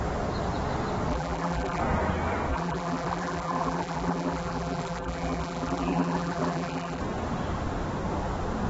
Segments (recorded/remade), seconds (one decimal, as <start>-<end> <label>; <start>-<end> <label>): 0.0-1.1 recorded; 1.1-1.8 remade; 1.8-2.5 recorded; 2.5-7.0 remade; 7.0-8.7 recorded